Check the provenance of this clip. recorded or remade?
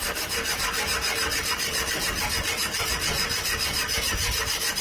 remade